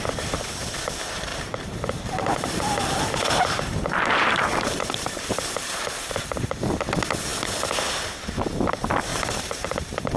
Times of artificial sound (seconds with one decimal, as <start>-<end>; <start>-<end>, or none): 1.3-6.5; 9.1-10.2